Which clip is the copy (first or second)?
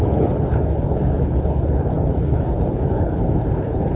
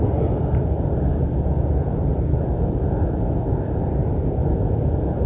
first